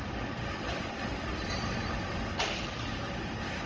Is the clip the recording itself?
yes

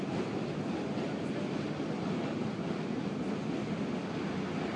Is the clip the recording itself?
yes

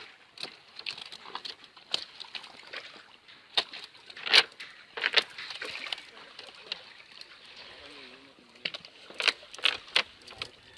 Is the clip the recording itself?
yes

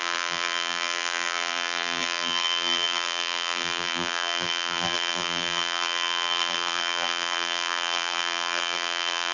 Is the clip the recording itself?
no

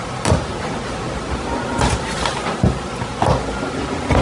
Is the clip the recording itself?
yes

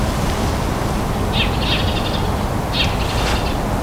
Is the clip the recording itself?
yes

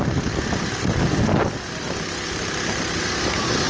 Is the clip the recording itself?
yes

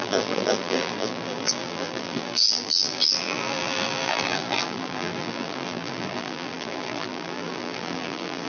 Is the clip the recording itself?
no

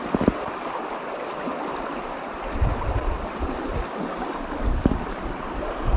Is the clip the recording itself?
no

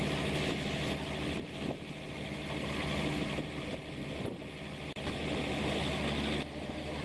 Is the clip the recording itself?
yes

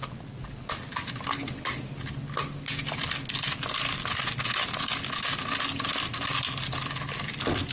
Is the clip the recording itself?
yes